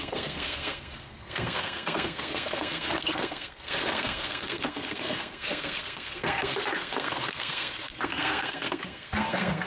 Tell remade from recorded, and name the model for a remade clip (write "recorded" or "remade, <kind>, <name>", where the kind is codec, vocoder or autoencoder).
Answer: remade, codec, SNAC